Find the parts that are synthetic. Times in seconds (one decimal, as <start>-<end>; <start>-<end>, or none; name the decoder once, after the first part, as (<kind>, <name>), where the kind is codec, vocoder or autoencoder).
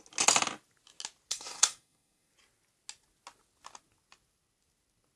1.3-2.3 (codec, SNAC)